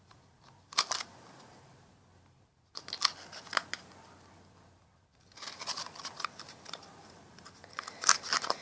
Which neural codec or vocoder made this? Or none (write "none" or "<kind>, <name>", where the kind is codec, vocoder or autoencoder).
none